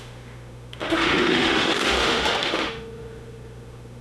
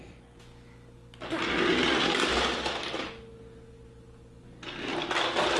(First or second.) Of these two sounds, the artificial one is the first